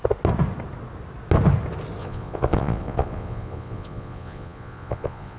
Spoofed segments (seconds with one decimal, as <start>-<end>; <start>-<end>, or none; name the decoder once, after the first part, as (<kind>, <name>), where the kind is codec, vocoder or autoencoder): 2.0-5.4 (vocoder, Vocos)